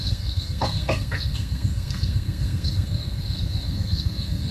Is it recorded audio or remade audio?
remade